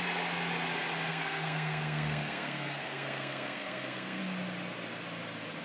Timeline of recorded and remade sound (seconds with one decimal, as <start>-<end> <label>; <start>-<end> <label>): 0.0-1.1 recorded; 1.1-4.2 remade; 4.2-5.6 recorded